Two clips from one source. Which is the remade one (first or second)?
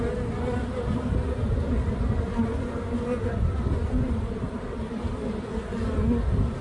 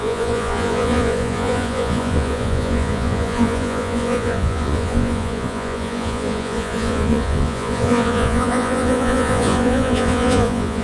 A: second